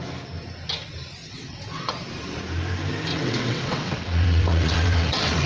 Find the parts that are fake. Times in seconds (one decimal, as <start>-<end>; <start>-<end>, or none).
1.2-1.9; 3.1-5.5

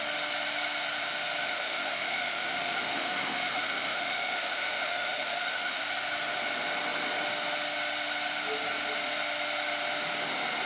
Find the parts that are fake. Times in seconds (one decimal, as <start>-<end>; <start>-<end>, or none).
1.4-5.8